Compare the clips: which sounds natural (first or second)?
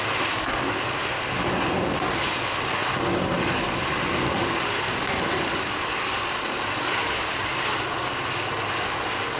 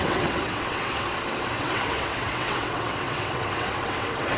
first